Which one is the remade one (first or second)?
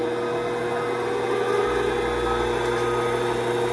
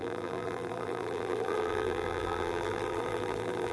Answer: second